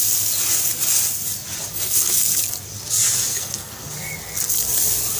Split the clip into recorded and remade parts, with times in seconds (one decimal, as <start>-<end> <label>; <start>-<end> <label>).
0.0-1.7 recorded; 1.7-2.3 remade; 2.3-3.3 recorded; 3.3-3.9 remade; 3.9-5.2 recorded